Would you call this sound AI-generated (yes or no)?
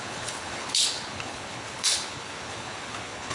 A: yes